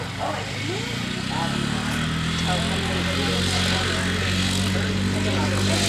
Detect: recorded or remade recorded